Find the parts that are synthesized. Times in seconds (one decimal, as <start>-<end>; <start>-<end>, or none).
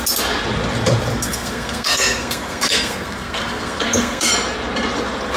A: 1.1-4.3